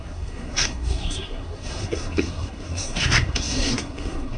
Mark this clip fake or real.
fake